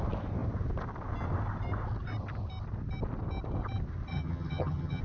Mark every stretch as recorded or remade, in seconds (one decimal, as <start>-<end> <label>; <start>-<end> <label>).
0.0-4.1 recorded; 4.1-5.0 remade